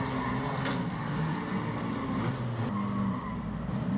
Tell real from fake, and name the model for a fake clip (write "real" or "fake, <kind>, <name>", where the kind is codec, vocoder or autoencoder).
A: real